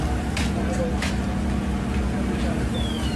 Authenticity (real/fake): real